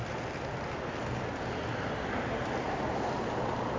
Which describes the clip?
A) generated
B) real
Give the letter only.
B